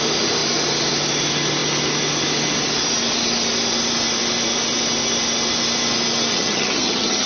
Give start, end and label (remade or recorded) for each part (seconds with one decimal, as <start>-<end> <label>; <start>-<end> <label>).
0.0-6.3 recorded; 6.3-7.3 remade